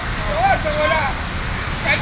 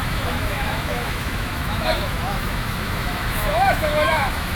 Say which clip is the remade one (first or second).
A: second